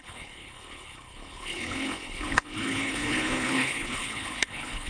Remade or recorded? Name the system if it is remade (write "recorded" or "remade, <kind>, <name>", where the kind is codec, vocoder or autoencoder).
remade, codec, HILCodec